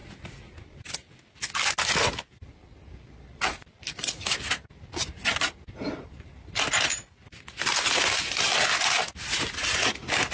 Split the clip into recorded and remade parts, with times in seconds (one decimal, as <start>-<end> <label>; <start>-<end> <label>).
0.0-10.3 recorded